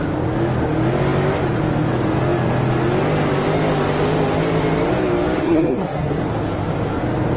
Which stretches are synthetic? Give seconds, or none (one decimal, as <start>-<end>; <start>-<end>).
5.4-6.2